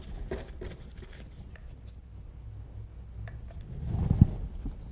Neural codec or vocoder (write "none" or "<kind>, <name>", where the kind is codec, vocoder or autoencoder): none